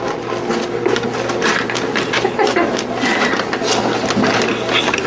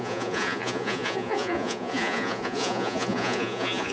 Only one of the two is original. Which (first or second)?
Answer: first